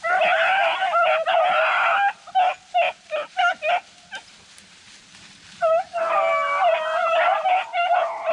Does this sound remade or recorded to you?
recorded